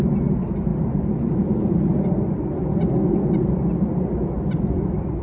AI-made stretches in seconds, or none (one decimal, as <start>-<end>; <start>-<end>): none